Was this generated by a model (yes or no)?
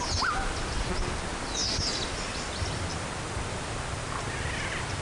no